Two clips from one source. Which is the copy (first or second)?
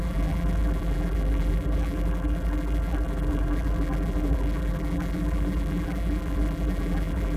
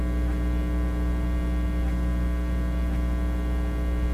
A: first